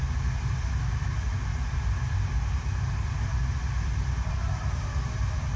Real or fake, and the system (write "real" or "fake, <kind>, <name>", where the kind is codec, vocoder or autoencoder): real